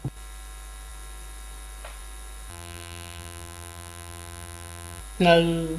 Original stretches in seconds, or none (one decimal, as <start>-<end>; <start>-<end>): 0.0-2.5; 5.0-5.8